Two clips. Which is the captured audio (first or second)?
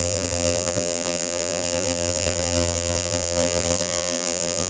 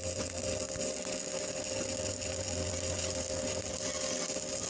second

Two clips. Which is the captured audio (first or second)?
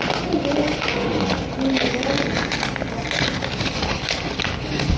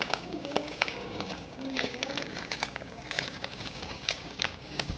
first